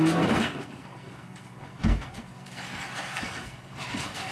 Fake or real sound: fake